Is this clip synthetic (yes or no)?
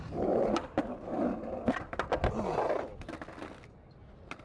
no